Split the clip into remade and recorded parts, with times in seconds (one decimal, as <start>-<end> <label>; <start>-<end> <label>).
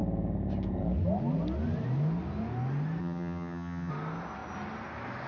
0.0-3.0 recorded; 3.0-3.9 remade; 3.9-5.3 recorded